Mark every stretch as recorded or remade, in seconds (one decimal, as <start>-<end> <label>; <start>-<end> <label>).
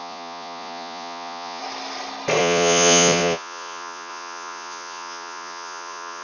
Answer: 0.0-1.6 remade; 1.6-2.4 recorded; 2.4-6.2 remade